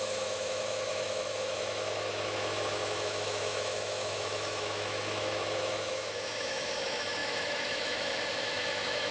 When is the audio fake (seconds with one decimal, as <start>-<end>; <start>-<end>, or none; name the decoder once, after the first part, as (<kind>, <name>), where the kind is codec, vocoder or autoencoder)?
0.0-9.1 (autoencoder, DAC-VAE)